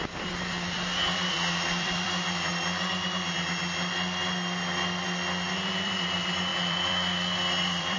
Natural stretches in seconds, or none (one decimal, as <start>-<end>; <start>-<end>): 2.5-5.7